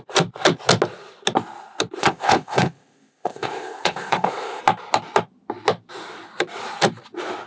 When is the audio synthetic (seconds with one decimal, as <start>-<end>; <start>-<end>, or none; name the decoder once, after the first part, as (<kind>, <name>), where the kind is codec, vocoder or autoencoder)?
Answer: 2.0-4.6 (codec, ZipCodec)